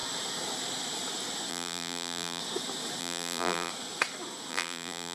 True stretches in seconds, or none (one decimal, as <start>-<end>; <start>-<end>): 0.0-1.5; 2.4-3.0; 3.7-4.5